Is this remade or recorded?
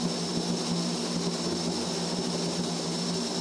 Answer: recorded